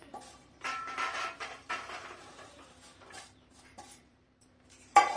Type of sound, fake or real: fake